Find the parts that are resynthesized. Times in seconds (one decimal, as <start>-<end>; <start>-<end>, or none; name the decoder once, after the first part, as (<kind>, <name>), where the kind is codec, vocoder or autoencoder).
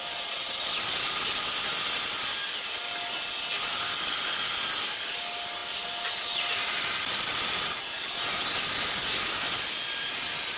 none